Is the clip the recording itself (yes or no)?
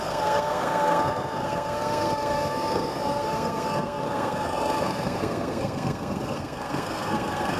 no